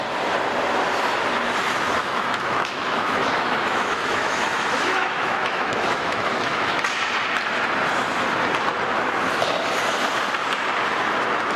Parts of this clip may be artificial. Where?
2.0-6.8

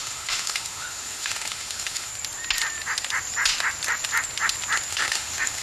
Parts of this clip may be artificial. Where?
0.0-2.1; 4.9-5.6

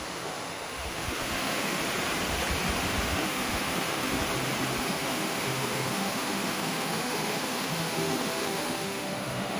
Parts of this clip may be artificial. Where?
0.0-1.8; 3.0-4.2; 4.8-9.6

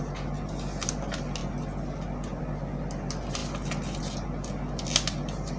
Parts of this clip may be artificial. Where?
none